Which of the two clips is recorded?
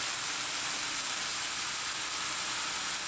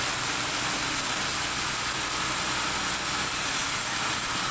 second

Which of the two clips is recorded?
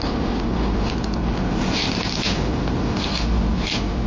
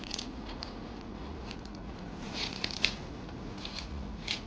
first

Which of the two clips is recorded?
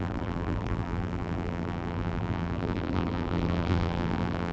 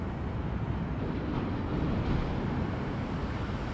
second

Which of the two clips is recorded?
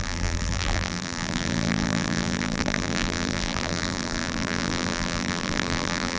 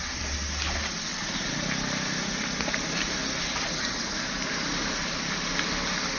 second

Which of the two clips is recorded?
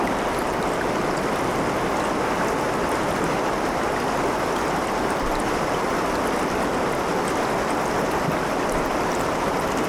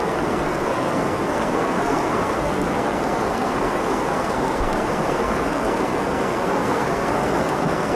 first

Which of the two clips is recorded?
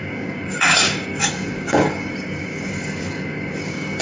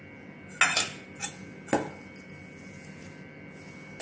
second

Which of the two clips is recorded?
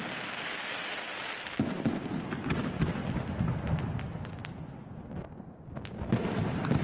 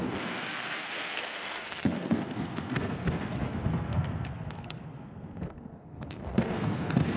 first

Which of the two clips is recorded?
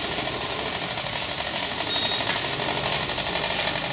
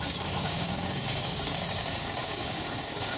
first